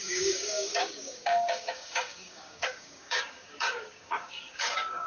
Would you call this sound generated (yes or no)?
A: yes